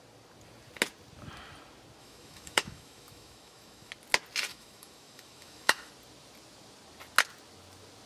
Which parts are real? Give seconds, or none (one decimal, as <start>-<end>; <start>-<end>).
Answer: 0.0-2.0; 3.9-4.5; 5.9-8.1